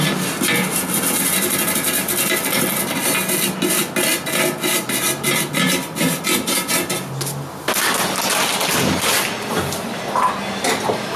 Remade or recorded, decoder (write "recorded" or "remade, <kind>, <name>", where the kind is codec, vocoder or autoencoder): recorded